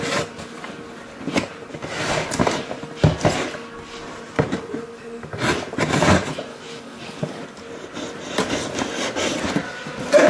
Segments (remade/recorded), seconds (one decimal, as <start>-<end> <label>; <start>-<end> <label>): 0.0-6.5 recorded; 6.5-7.4 remade; 7.4-10.3 recorded